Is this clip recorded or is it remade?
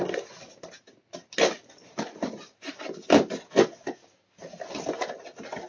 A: recorded